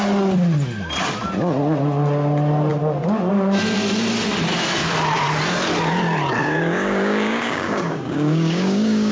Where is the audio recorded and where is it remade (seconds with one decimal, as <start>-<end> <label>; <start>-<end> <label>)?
0.0-6.4 recorded; 6.4-9.1 remade